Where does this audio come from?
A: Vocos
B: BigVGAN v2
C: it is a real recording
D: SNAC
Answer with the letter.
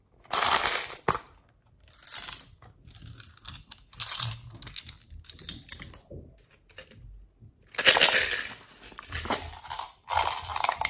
C